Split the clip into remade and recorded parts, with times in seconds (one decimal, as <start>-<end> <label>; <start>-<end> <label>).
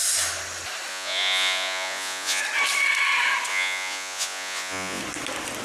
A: 0.0-0.9 recorded; 0.9-2.4 remade; 2.4-3.5 recorded; 3.5-5.0 remade; 5.0-5.6 recorded